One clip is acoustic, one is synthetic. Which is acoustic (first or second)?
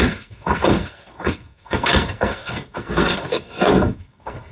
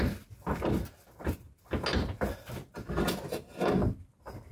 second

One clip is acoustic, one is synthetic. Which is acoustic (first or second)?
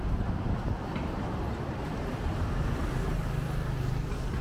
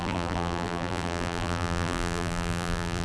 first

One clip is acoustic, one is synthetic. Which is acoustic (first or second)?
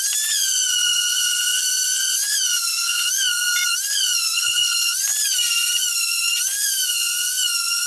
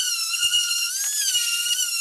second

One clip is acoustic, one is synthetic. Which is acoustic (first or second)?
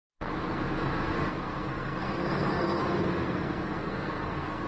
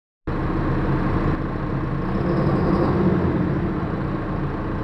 second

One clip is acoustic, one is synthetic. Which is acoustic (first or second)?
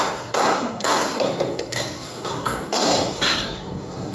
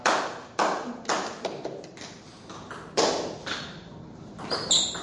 second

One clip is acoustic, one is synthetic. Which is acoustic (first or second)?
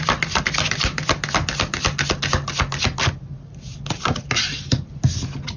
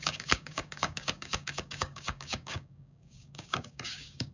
first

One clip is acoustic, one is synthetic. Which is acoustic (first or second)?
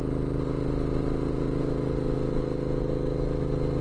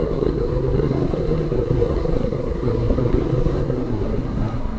first